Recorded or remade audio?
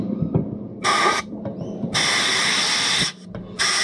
recorded